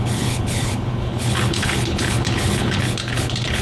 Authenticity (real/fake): fake